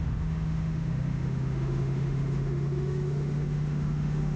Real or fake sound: fake